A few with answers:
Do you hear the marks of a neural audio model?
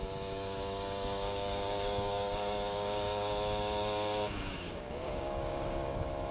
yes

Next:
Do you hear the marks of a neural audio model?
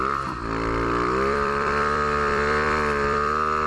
yes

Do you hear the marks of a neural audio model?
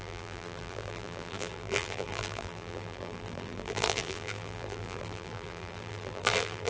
yes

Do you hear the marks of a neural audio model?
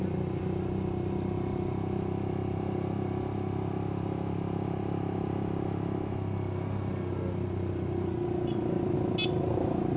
no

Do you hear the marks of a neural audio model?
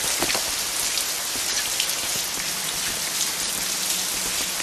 no